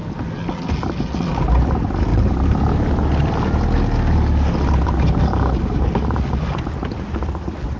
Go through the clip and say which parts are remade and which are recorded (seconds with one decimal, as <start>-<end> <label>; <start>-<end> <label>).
0.0-2.1 recorded; 2.1-2.7 remade; 2.7-7.8 recorded